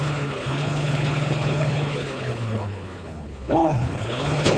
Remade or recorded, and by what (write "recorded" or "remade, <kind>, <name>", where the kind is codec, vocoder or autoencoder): remade, codec, HILCodec